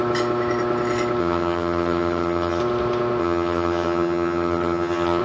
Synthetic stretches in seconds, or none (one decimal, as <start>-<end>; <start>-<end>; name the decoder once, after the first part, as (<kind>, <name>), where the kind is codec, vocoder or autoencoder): 1.2-2.6 (vocoder, HiFi-GAN); 3.2-5.2